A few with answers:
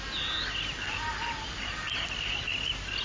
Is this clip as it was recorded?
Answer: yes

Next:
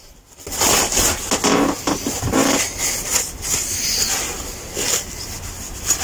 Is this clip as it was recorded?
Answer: yes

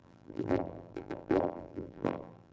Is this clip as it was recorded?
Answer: no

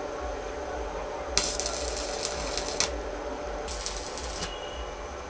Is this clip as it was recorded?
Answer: yes